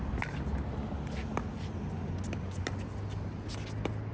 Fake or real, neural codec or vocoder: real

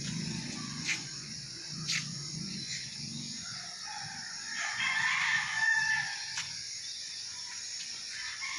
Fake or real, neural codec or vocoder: fake, vocoder, Vocos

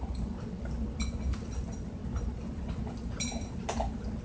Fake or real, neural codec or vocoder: real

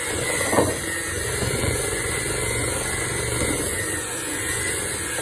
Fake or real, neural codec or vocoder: fake, vocoder, Vocos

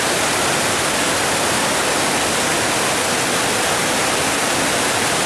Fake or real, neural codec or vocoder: real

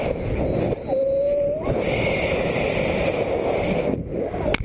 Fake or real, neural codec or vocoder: real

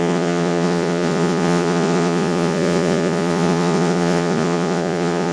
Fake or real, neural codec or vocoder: fake, vocoder, Vocos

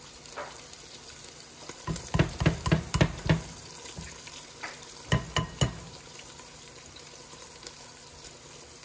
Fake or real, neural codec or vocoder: real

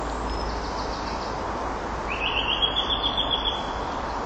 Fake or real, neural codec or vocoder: real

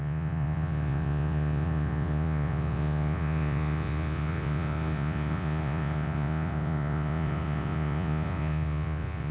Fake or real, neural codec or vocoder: fake, vocoder, Vocos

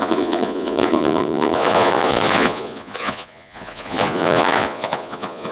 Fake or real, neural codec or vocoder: fake, vocoder, Vocos